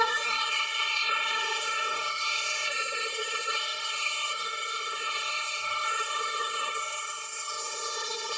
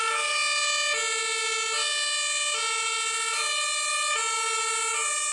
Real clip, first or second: second